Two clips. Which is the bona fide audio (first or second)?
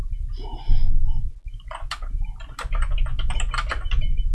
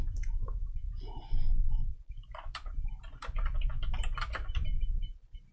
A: first